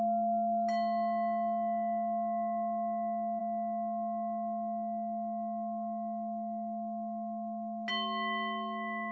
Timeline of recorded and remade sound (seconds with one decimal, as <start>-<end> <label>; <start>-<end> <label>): 0.0-9.1 recorded

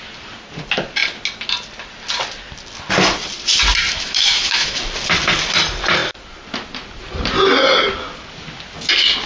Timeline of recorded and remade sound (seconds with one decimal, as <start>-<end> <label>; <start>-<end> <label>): 0.0-3.9 recorded; 3.9-4.8 remade; 4.8-9.3 recorded

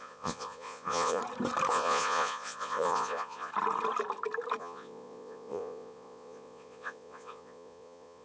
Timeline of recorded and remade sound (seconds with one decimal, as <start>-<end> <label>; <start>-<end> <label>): 0.0-1.2 remade; 1.2-1.7 recorded; 1.7-3.5 remade; 3.5-4.6 recorded; 4.6-8.2 remade

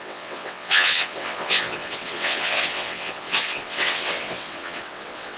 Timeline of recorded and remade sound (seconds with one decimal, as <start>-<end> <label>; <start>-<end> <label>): 0.0-5.4 remade

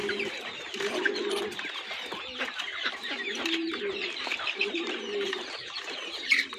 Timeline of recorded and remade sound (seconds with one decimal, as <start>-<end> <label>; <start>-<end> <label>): 0.0-6.6 remade

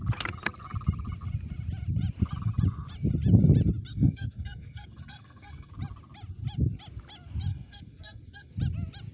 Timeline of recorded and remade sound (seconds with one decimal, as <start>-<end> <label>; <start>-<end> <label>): 0.0-3.9 recorded; 3.9-5.7 remade; 5.7-7.5 recorded; 7.5-8.5 remade; 8.5-9.1 recorded